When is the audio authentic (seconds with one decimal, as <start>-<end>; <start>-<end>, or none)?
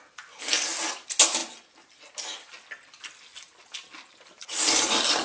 0.0-5.2